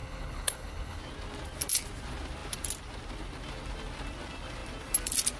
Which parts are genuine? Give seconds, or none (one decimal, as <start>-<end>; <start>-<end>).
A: 1.0-5.4